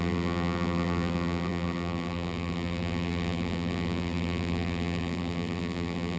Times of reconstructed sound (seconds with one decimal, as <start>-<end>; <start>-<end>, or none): 0.0-6.2